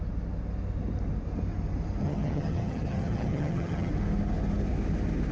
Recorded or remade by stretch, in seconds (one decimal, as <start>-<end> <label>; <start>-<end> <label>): 0.0-2.0 recorded; 2.0-3.9 remade; 3.9-5.3 recorded